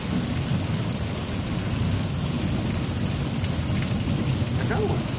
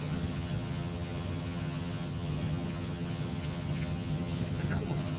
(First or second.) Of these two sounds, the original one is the first